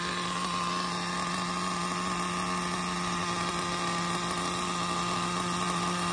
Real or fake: real